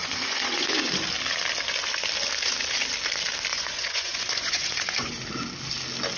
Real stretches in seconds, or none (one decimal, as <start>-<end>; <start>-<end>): 0.9-3.5; 5.1-6.2